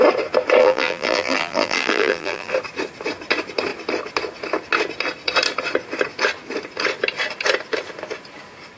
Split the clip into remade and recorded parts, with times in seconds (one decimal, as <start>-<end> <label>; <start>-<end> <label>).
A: 0.0-0.6 recorded; 0.6-2.5 remade; 2.5-8.8 recorded